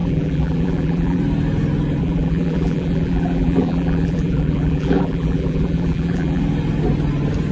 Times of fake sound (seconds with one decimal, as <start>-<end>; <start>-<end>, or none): 0.0-1.2; 2.0-6.4